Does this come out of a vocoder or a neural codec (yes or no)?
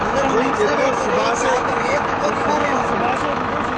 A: yes